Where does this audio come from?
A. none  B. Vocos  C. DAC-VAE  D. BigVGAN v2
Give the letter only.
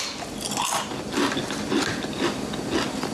A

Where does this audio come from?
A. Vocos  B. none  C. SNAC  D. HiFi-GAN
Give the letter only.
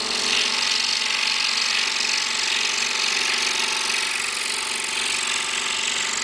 B